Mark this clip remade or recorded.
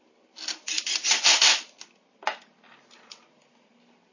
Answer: recorded